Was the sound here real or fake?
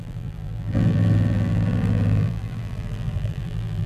fake